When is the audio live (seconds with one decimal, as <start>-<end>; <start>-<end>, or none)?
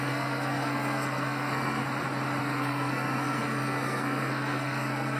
1.8-2.4